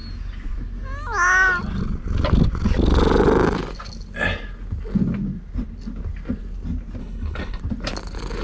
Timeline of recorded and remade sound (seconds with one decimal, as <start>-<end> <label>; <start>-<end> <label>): 0.0-7.0 recorded; 7.0-7.6 remade; 7.6-8.4 recorded